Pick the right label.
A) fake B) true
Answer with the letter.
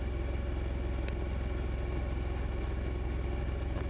B